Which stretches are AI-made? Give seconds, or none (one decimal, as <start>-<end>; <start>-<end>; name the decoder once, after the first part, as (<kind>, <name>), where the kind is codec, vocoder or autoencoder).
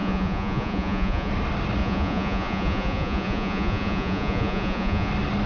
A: 0.0-1.3 (vocoder, Vocos); 1.8-5.1